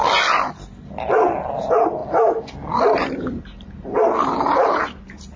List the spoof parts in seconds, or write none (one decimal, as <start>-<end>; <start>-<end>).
none